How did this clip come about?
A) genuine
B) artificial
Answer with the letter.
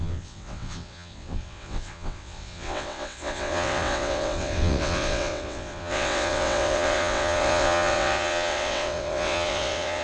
B